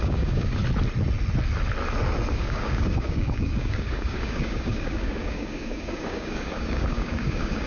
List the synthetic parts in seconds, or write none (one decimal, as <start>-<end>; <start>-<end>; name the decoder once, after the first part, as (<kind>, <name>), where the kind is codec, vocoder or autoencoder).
0.0-0.6 (codec, DAC); 2.3-7.7